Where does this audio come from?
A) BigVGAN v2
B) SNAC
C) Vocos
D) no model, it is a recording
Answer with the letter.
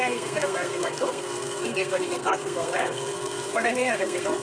B